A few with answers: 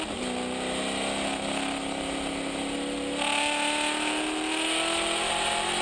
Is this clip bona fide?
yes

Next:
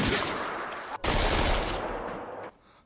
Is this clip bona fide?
no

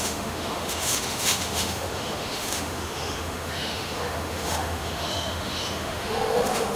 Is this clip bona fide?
no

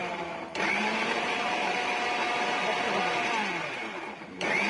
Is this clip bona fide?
no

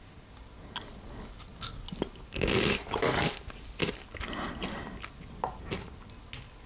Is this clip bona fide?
yes